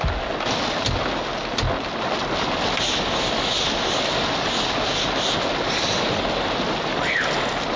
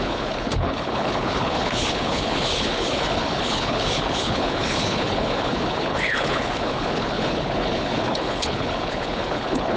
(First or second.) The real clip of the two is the first